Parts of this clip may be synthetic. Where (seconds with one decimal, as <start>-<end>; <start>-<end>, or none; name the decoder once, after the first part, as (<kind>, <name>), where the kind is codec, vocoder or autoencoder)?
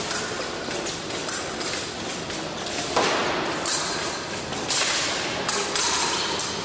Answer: none